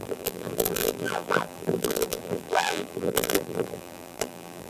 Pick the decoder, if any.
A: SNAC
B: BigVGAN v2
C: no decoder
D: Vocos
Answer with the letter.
B